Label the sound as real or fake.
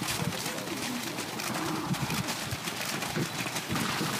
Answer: fake